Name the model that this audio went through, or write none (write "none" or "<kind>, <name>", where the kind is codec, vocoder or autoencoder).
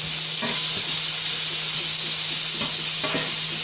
none